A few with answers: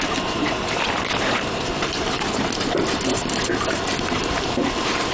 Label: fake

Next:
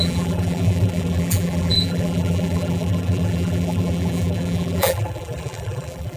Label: fake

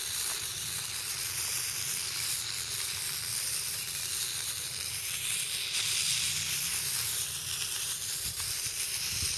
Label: fake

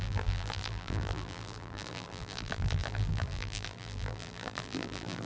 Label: fake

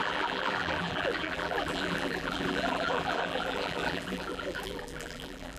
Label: fake